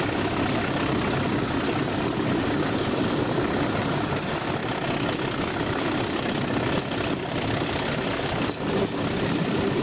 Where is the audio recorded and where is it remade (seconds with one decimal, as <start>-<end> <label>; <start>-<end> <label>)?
0.0-9.8 recorded